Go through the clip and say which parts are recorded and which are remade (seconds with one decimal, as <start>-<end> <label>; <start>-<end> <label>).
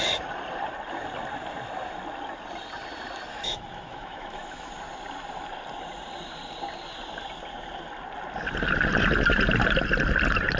0.0-3.3 recorded; 3.3-4.7 remade; 4.7-10.6 recorded